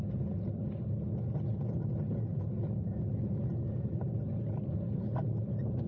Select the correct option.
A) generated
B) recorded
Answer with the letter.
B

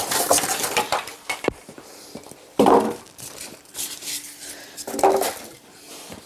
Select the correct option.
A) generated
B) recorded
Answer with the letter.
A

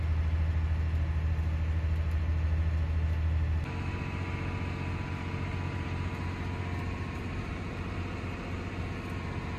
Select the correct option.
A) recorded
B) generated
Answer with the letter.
A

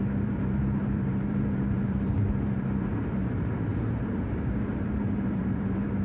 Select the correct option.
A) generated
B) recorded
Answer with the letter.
A